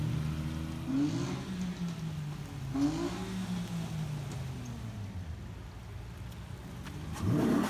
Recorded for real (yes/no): yes